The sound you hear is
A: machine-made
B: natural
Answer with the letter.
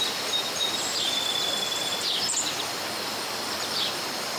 A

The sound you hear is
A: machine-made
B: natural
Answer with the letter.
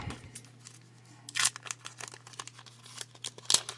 B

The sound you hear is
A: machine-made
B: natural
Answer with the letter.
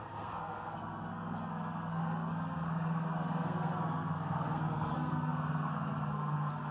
A